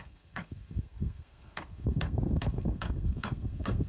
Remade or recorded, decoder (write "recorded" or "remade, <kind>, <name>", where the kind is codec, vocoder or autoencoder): remade, codec, SNAC